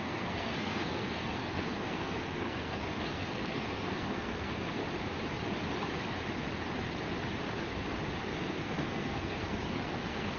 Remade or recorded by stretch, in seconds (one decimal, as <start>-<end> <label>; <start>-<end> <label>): 0.0-4.8 remade; 4.8-8.2 recorded; 8.2-10.4 remade